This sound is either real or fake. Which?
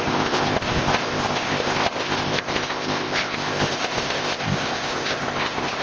fake